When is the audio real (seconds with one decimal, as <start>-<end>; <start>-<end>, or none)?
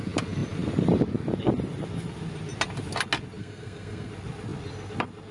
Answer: 0.0-3.4; 4.1-5.3